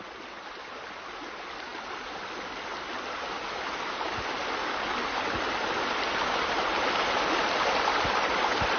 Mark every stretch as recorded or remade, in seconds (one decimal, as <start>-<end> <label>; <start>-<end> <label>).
0.0-8.8 recorded